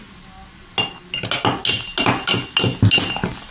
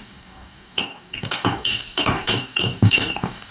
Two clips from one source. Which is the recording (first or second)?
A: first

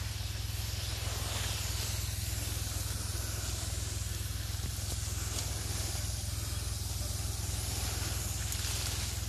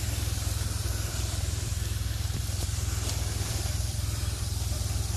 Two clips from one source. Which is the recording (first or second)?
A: first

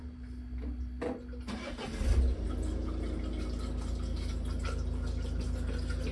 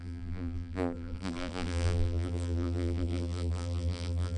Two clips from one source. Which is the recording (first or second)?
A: first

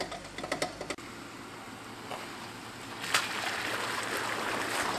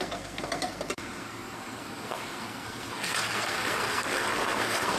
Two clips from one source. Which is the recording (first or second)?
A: first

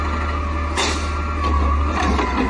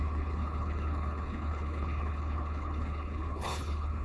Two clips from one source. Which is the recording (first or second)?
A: first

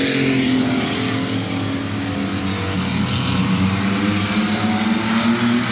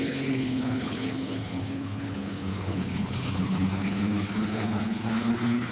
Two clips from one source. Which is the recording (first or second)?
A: first